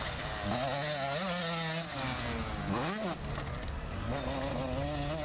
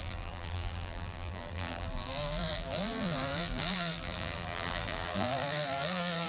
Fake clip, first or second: second